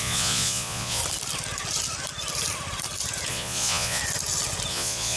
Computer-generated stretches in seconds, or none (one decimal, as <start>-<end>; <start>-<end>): 0.0-1.0; 3.3-4.0; 4.7-5.2